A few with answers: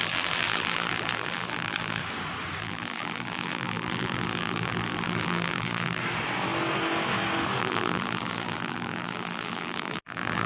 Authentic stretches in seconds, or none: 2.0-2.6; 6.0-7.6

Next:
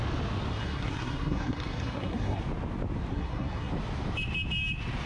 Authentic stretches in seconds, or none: 0.0-0.5; 2.4-3.1; 3.7-5.1

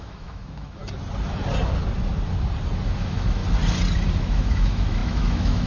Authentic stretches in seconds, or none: 0.8-3.0; 3.4-4.2

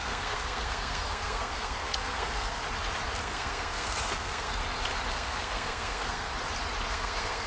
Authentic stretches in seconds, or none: 2.6-3.2; 4.6-5.1; 6.3-6.9

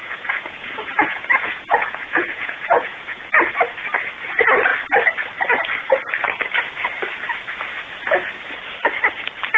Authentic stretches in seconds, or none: 3.3-9.6

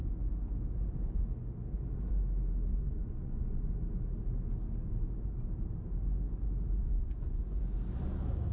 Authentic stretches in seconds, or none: 0.0-2.7; 3.7-6.8; 7.6-8.5